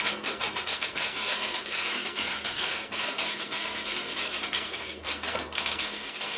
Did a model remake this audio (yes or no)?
yes